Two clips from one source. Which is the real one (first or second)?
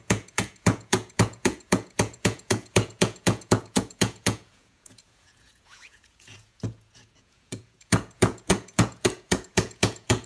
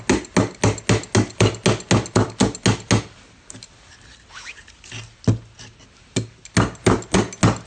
second